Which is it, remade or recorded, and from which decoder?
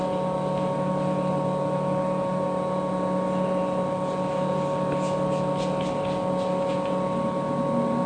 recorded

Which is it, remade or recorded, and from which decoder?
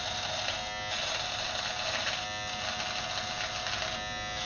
recorded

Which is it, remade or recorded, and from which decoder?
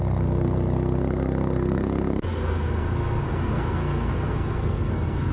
remade, codec, SNAC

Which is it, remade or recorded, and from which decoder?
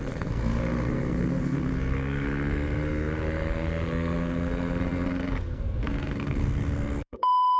remade, codec, SNAC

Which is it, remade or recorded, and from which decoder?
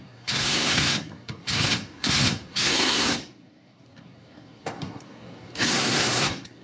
remade, codec, SNAC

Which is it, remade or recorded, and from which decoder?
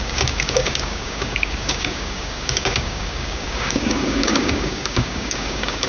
remade, codec, DAC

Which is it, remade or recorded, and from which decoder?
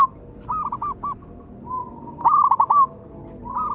recorded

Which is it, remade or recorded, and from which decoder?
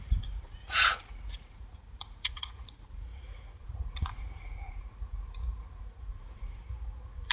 remade, vocoder, Vocos